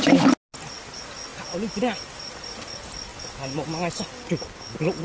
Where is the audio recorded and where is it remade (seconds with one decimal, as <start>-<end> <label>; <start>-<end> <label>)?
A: 0.0-5.0 recorded